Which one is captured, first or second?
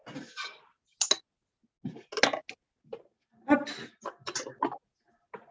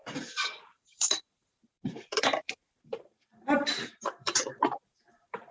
first